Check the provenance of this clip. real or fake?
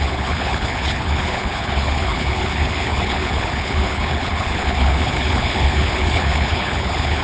fake